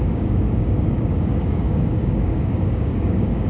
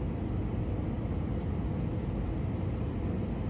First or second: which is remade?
first